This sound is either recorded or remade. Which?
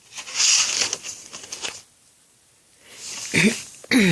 recorded